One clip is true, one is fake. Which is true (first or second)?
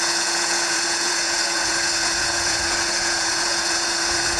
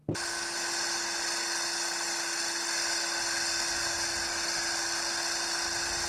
second